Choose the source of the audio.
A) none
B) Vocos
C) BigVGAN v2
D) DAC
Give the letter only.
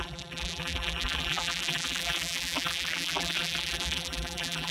C